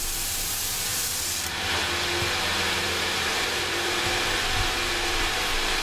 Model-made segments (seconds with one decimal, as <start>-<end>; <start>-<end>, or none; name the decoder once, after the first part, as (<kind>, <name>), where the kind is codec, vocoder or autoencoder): 0.0-0.9 (vocoder, BigVGAN v2); 3.0-5.8